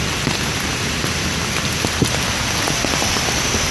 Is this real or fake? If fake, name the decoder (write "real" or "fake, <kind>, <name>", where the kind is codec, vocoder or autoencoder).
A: real